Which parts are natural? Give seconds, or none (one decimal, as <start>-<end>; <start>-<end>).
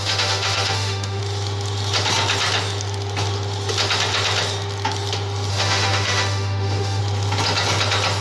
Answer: 1.2-5.5; 7.0-8.2